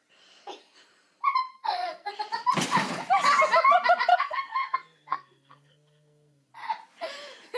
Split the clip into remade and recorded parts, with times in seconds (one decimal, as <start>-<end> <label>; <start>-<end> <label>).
0.0-1.5 recorded; 1.5-2.1 remade; 2.1-4.1 recorded; 4.1-6.5 remade; 6.5-7.6 recorded